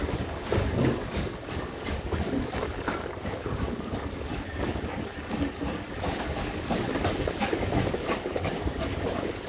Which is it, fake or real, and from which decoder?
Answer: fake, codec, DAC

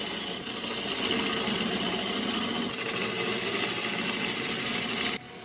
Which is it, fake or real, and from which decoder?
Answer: real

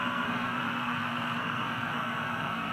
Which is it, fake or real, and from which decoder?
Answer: fake, codec, SNAC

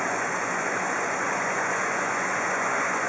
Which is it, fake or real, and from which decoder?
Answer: fake, vocoder, Vocos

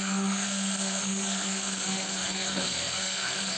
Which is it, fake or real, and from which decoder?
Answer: fake, codec, SNAC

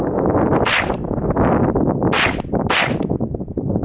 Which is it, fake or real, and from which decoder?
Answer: real